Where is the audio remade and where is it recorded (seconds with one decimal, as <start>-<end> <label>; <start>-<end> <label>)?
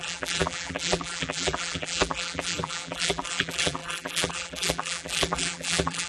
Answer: 0.0-6.1 remade